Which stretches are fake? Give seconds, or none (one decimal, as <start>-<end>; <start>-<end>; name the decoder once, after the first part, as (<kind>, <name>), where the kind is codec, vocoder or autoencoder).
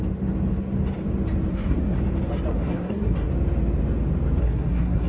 1.5-2.0 (codec, SNAC); 2.5-3.3; 4.4-5.1